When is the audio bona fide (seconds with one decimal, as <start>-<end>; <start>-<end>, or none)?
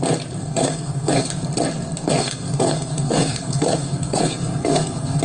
0.0-0.4; 1.3-2.1